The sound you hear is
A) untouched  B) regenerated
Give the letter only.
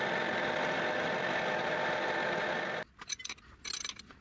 A